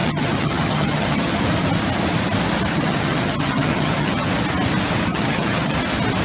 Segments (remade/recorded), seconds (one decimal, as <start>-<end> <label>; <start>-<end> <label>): 0.0-1.3 remade; 1.3-2.7 recorded; 2.7-4.3 remade; 4.3-5.1 recorded; 5.1-5.8 remade; 5.8-6.2 recorded